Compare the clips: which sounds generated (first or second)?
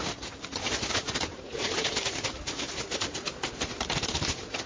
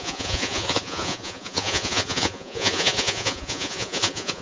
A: second